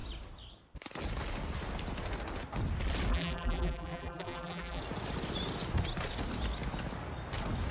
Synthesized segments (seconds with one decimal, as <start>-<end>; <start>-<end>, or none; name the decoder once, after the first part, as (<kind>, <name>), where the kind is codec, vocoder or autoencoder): 3.1-4.8 (vocoder, BigVGAN v2)